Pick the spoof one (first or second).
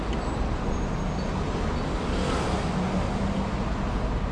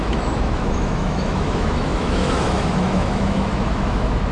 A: second